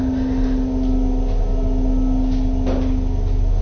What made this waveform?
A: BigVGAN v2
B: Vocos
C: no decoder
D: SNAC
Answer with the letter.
C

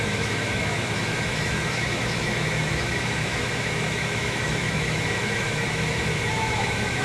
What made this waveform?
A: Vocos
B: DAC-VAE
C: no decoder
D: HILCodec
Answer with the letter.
B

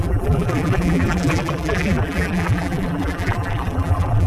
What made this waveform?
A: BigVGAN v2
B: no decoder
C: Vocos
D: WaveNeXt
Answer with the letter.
A